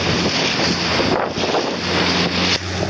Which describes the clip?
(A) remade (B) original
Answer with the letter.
B